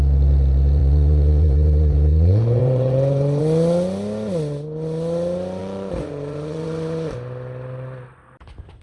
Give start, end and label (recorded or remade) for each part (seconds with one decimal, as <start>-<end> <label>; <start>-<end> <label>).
0.0-0.8 recorded; 0.8-3.4 remade; 3.4-5.6 recorded; 5.6-7.1 remade; 7.1-8.8 recorded